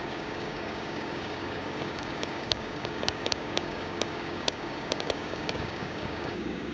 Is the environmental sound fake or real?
fake